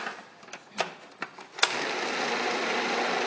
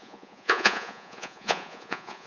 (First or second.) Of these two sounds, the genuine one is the first